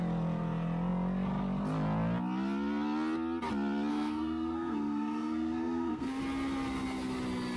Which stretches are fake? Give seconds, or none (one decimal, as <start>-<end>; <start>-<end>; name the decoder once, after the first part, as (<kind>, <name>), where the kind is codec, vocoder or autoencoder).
3.9-6.2 (codec, SNAC)